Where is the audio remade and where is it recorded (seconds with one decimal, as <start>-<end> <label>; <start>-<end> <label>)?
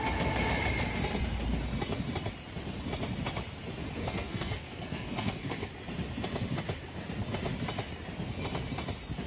0.0-4.0 recorded; 4.0-5.7 remade; 5.7-9.3 recorded